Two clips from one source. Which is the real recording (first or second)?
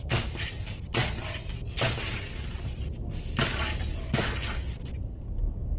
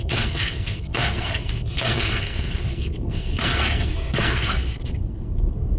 first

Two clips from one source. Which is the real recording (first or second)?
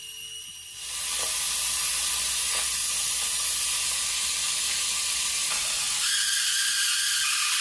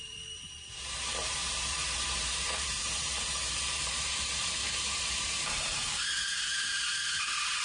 first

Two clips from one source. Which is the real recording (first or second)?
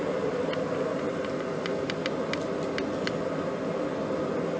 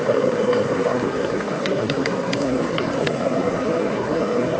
first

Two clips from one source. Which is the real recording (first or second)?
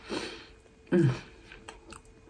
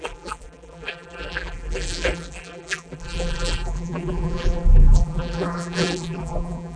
first